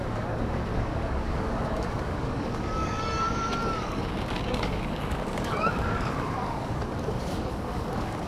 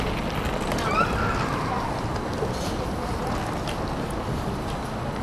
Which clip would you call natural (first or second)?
second